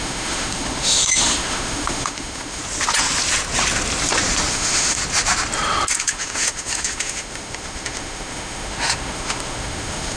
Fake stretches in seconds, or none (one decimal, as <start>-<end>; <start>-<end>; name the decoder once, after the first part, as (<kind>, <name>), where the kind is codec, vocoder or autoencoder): 0.0-2.6 (autoencoder, DAC-VAE); 4.5-5.0; 5.9-10.2